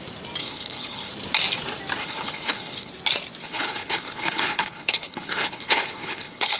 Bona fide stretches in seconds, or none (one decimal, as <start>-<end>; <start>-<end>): 0.0-0.4; 1.1-2.0; 2.9-3.4